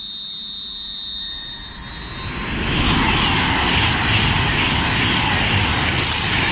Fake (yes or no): no